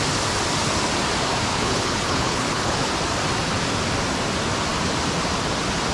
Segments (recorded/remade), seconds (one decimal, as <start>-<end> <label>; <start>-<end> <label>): 0.0-1.5 recorded; 1.5-2.9 remade; 2.9-5.9 recorded